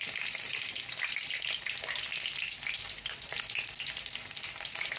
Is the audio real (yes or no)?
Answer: yes